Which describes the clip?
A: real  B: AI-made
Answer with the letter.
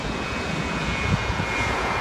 B